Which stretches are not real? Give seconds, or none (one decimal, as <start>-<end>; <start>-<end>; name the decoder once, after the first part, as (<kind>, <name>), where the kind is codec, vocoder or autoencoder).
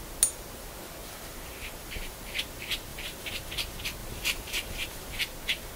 1.0-2.4 (vocoder, BigVGAN v2); 2.9-3.5; 4.0-5.2